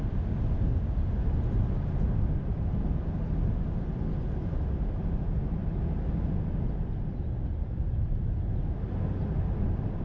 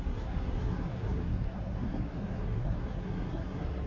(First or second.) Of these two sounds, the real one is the first